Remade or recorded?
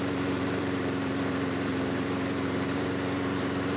remade